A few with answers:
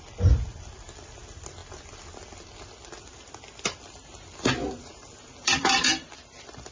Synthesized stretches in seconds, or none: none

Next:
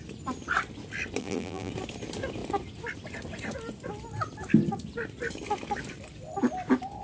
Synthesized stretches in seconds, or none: 1.2-1.7

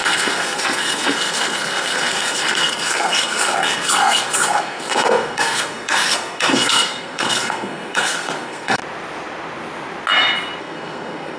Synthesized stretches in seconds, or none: 0.0-8.8; 10.6-11.4

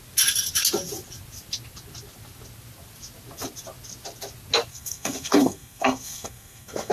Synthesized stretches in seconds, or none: 4.7-6.9

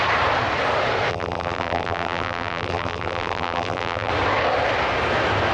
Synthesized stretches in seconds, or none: 1.1-4.1

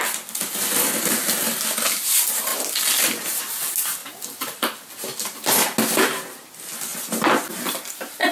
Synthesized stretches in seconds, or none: none

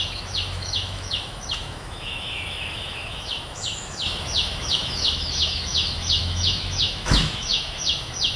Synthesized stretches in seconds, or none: 0.0-8.4